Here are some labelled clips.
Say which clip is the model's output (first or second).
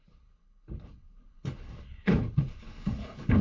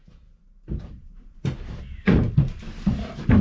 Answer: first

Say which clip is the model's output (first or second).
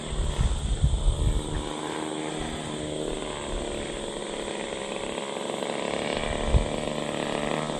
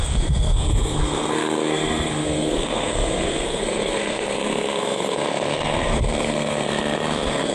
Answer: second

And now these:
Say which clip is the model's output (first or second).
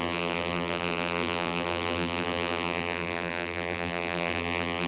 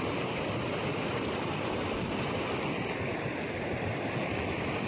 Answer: first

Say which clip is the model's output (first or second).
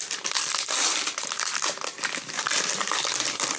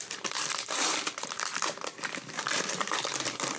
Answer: second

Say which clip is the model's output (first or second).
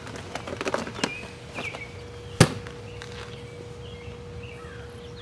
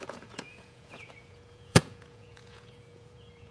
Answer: second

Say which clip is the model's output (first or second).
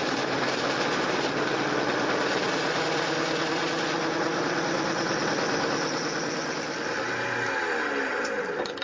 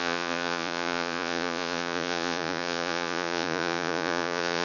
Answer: second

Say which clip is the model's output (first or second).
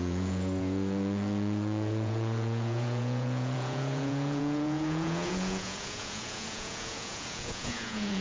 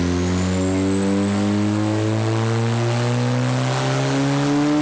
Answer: first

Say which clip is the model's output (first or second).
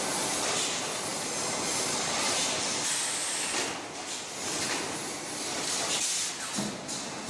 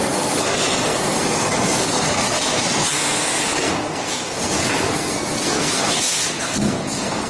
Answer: second